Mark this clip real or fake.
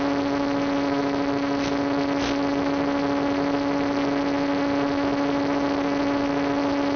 real